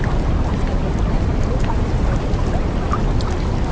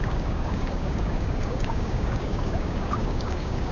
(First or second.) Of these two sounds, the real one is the first